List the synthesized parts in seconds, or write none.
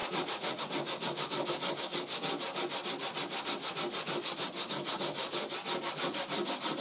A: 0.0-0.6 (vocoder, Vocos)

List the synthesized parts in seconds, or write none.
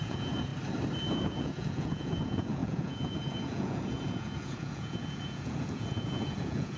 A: 0.0-0.5 (vocoder, Vocos); 1.1-6.8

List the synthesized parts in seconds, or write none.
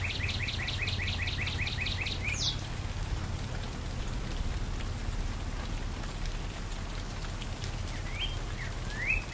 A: none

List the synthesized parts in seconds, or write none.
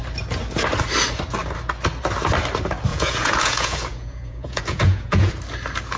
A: 2.9-5.3 (vocoder, Vocos)